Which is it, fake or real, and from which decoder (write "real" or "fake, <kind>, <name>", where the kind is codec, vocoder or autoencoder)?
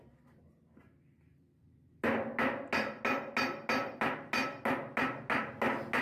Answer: real